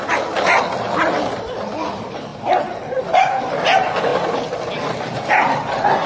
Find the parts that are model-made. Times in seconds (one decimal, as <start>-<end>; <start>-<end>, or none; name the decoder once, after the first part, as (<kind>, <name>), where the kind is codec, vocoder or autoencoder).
none